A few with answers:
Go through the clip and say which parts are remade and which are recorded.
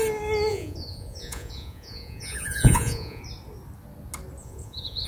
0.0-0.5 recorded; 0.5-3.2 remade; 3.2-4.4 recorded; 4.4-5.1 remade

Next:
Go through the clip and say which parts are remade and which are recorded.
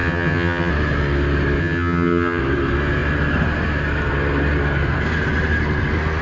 0.0-0.7 remade; 0.7-1.6 recorded; 1.6-2.4 remade; 2.4-6.2 recorded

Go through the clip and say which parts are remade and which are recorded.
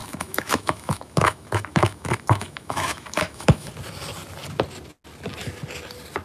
0.0-3.7 remade; 3.7-6.2 recorded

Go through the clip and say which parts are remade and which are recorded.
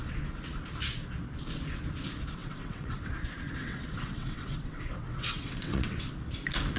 0.0-2.4 recorded; 2.4-3.1 remade; 3.1-3.6 recorded; 3.6-6.1 remade; 6.1-6.8 recorded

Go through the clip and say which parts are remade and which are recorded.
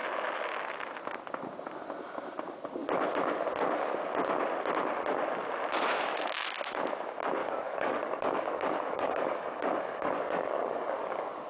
0.0-7.4 recorded; 7.4-11.5 remade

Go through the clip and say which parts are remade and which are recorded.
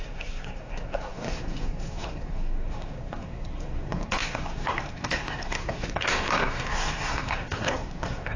0.0-8.4 remade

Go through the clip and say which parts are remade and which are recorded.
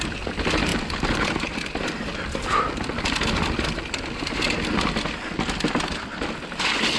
0.0-7.0 recorded